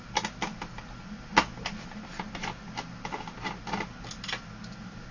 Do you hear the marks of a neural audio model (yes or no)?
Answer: no